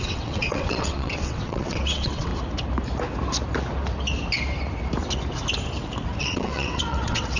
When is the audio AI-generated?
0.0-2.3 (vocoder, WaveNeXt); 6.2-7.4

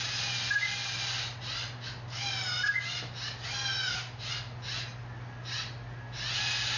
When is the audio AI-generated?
0.8-4.6 (vocoder, BigVGAN v2)

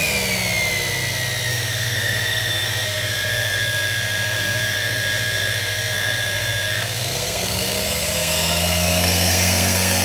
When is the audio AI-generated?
1.5-10.0 (codec, SNAC)

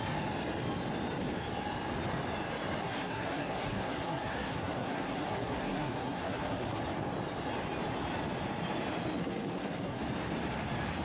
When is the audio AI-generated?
2.8-6.8 (codec, SNAC); 9.2-10.0

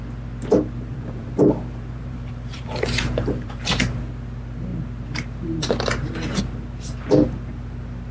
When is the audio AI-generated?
0.9-4.0 (vocoder, BigVGAN v2)

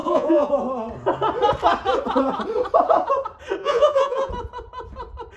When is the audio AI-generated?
0.0-0.5 (vocoder, Vocos); 3.6-4.3